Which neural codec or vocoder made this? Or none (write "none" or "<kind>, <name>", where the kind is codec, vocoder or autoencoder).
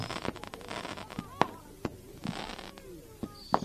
none